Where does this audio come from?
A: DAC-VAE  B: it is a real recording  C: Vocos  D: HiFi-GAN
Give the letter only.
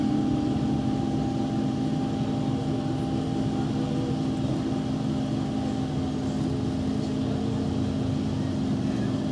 B